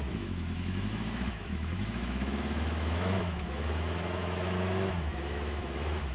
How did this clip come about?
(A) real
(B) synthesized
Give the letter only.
B